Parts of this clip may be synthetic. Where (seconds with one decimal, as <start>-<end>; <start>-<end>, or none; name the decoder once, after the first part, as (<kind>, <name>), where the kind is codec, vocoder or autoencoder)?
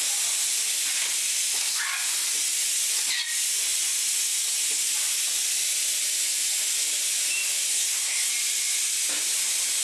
7.7-8.3 (codec, SNAC)